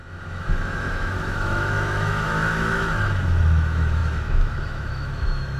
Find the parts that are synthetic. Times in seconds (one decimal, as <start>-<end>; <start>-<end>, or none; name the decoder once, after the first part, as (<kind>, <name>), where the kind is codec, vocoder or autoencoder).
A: 0.0-5.6 (autoencoder, DAC-VAE)